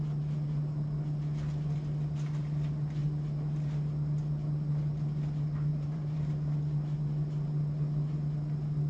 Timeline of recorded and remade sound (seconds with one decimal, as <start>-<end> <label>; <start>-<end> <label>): 0.0-5.7 recorded; 5.7-6.3 remade; 6.3-8.9 recorded